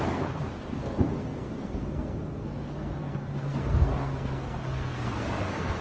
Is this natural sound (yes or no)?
no